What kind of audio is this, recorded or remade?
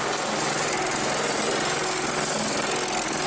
recorded